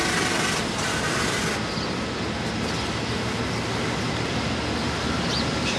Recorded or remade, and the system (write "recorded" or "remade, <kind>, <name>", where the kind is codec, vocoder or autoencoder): recorded